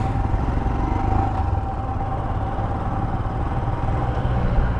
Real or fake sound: real